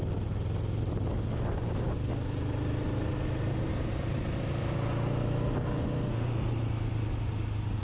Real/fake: real